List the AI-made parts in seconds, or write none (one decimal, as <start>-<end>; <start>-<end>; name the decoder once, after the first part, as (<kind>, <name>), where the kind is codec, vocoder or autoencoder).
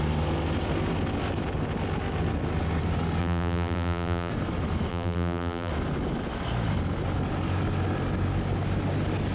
3.2-4.3 (vocoder, BigVGAN v2); 4.9-5.7